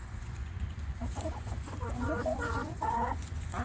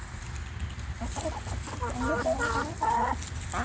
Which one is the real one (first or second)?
second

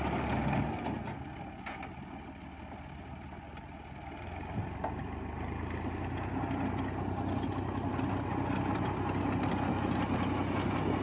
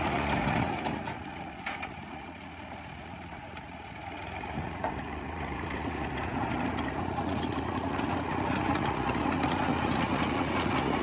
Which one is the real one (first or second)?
first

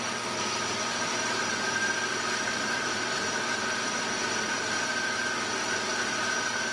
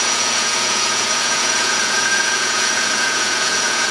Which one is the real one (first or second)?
first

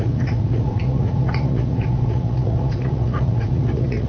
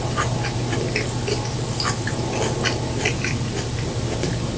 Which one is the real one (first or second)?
second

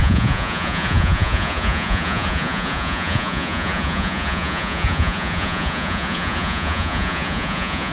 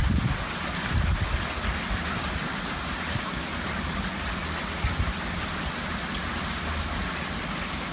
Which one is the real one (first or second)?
second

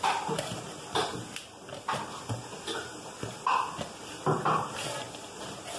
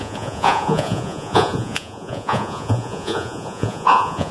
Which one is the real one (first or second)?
first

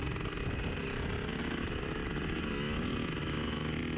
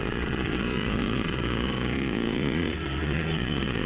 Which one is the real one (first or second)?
first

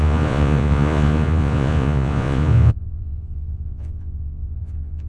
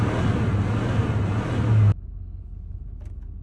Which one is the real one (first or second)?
second